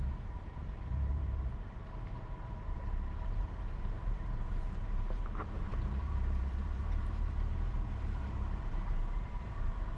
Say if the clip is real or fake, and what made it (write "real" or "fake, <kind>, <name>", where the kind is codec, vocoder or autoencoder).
fake, vocoder, BigVGAN v2